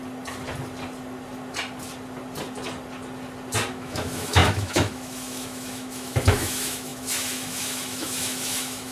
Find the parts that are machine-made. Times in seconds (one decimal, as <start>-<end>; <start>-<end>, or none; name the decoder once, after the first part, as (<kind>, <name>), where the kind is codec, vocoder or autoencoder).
3.7-8.9 (autoencoder, DAC-VAE)